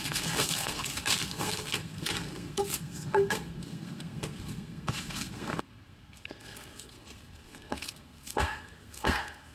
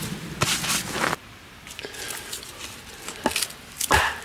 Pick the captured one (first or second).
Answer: second